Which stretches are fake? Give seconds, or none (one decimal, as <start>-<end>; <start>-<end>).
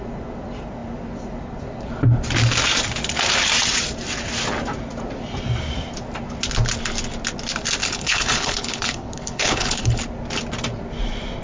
7.8-10.0